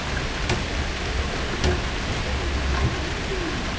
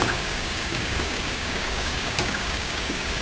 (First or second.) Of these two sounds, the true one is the first